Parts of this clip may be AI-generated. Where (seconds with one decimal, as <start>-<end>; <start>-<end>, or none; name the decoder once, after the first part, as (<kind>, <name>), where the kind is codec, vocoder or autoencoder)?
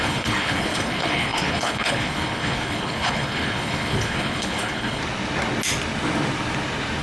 0.0-5.0 (codec, HILCodec)